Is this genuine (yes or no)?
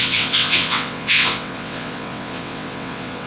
no